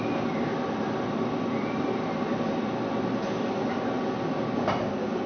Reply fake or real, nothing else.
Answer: real